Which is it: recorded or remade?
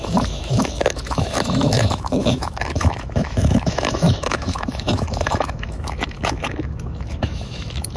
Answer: remade